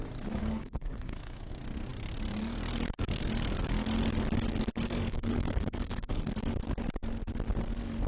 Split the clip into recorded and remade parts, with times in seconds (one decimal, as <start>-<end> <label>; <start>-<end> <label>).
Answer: 0.0-0.4 recorded; 0.4-1.5 remade; 1.5-4.8 recorded; 4.8-6.3 remade; 6.3-8.1 recorded